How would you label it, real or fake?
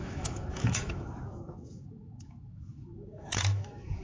fake